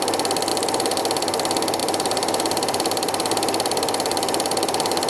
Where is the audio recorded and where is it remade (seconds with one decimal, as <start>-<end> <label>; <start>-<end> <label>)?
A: 0.0-0.5 recorded; 0.5-1.0 remade; 1.0-1.8 recorded; 1.8-5.1 remade